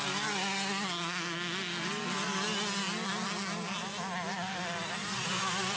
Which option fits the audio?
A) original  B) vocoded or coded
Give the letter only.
A